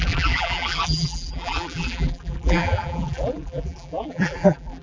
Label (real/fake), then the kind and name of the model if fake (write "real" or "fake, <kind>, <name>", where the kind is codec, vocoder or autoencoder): fake, vocoder, BigVGAN v2